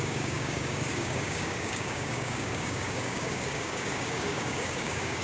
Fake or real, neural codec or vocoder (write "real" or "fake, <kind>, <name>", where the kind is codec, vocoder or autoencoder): fake, codec, DAC